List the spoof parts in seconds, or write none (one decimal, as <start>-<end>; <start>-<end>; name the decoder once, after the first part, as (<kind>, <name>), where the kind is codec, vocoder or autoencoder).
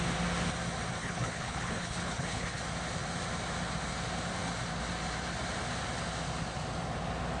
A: 1.0-2.6 (codec, HILCodec)